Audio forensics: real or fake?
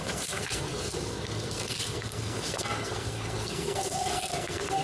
fake